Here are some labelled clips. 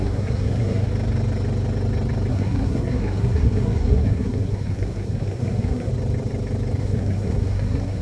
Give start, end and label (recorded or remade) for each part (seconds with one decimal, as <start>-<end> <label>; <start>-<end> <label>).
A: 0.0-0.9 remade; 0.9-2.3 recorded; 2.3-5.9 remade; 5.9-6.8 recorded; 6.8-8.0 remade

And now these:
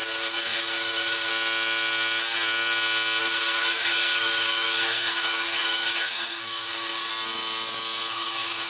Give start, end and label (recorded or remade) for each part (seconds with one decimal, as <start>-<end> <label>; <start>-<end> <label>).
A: 0.0-1.3 remade; 1.3-3.2 recorded; 3.2-7.1 remade; 7.1-8.1 recorded; 8.1-8.7 remade

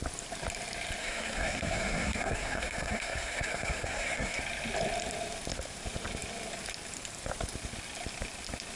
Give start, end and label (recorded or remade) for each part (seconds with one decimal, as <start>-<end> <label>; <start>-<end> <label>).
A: 0.0-1.0 recorded; 1.0-4.4 remade; 4.4-8.8 recorded

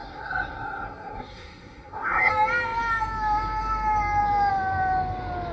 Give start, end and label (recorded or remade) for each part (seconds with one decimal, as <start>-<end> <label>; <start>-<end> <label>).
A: 0.0-2.3 remade; 2.3-5.5 recorded

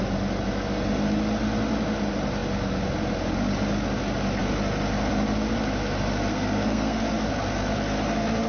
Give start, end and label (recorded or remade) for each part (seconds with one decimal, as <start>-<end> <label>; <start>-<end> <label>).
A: 0.0-6.3 recorded; 6.3-7.0 remade; 7.0-8.5 recorded

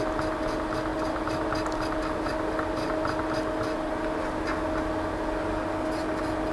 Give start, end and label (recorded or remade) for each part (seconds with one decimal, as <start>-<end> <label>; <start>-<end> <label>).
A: 0.0-6.5 recorded

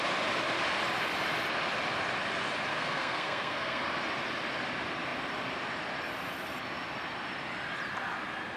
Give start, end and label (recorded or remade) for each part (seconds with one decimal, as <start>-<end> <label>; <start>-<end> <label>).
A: 0.0-2.7 recorded; 2.7-3.8 remade; 3.8-8.6 recorded

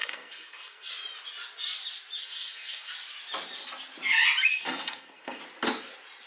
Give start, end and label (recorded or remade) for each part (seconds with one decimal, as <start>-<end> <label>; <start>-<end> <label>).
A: 0.0-0.9 remade; 0.9-2.2 recorded; 2.2-2.9 remade; 2.9-4.5 recorded; 4.5-5.4 remade; 5.4-6.3 recorded